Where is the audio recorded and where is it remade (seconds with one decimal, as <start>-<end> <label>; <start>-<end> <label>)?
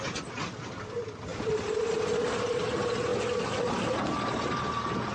0.0-5.1 recorded